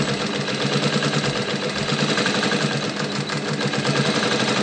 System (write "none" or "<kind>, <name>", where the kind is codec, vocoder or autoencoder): none